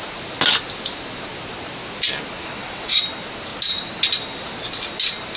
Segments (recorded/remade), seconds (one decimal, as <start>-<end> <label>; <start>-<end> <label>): 0.0-2.5 recorded; 2.5-3.0 remade; 3.0-5.4 recorded